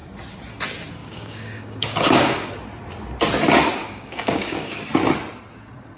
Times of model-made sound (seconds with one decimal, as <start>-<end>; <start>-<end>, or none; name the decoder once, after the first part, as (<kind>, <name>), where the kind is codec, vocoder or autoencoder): 1.0-2.5 (codec, DAC); 3.8-4.7